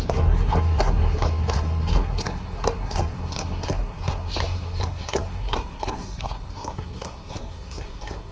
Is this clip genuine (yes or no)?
no